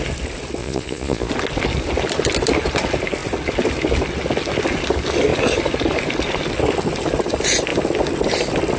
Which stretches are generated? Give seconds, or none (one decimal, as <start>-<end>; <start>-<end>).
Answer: 0.6-1.3